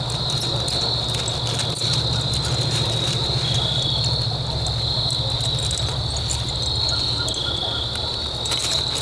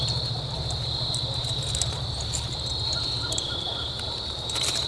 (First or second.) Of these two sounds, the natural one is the first